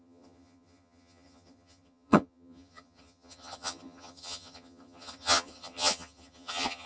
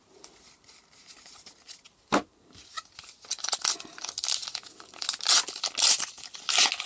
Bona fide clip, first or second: second